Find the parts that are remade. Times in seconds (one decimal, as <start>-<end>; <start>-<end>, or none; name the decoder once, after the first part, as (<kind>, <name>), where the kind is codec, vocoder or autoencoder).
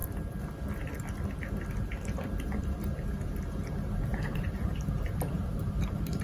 3.5-6.2 (vocoder, BigVGAN v2)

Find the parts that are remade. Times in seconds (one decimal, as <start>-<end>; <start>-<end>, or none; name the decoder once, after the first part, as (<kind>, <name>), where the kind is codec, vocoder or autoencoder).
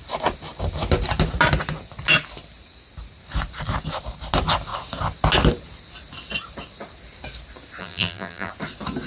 7.8-8.5 (vocoder, BigVGAN v2)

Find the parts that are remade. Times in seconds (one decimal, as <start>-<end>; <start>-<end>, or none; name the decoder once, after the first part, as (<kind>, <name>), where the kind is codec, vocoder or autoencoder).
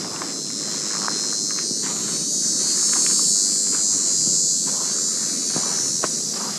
2.0-3.3 (vocoder, BigVGAN v2)